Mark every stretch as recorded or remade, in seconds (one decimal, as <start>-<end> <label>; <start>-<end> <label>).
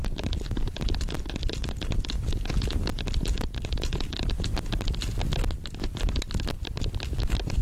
0.0-4.6 remade; 4.6-7.6 recorded